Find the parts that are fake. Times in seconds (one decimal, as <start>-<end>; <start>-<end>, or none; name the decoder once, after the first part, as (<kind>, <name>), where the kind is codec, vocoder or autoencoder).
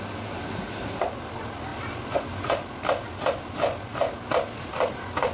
none